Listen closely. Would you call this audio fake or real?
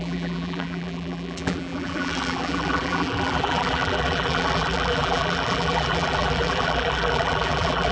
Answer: fake